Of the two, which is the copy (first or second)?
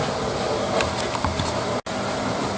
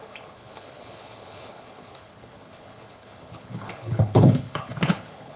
second